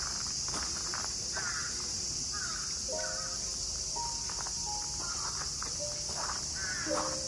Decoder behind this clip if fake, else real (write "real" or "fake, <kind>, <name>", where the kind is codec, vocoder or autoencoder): real